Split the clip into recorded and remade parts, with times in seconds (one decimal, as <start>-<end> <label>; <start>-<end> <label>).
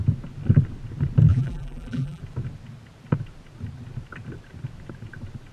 0.0-1.3 recorded; 1.3-2.2 remade; 2.2-5.5 recorded